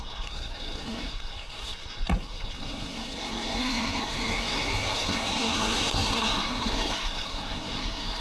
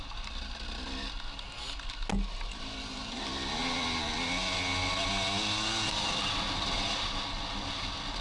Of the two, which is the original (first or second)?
second